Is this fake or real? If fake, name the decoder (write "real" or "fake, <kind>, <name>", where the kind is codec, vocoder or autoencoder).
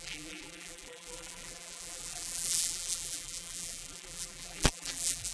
fake, vocoder, BigVGAN v2